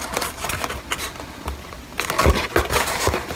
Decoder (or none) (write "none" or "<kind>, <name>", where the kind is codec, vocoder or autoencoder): none